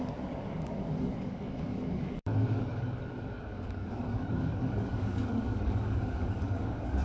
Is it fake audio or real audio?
fake